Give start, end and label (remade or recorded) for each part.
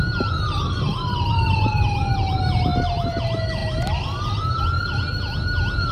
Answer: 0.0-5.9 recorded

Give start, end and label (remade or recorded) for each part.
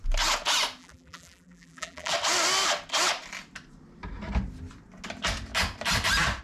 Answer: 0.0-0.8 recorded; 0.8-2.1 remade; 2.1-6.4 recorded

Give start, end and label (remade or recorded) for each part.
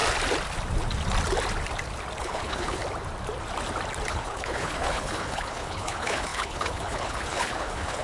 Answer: 0.0-2.2 recorded; 2.2-2.8 remade; 2.8-4.1 recorded; 4.1-8.0 remade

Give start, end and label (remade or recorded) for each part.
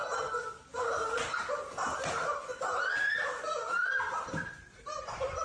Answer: 0.0-5.4 recorded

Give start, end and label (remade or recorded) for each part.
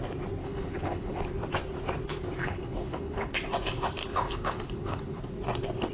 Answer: 0.0-0.4 recorded; 0.4-1.1 remade; 1.1-2.4 recorded; 2.4-3.3 remade; 3.3-4.0 recorded; 4.0-5.2 remade; 5.2-5.9 recorded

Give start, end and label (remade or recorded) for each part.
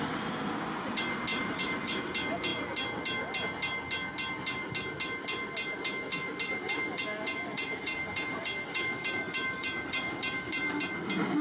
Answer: 0.0-1.3 recorded; 1.3-2.0 remade; 2.0-6.5 recorded; 6.5-7.0 remade; 7.0-7.5 recorded; 7.5-10.8 remade; 10.8-11.4 recorded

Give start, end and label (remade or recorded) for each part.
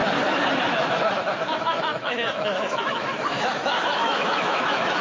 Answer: 0.0-0.7 recorded; 0.7-5.0 remade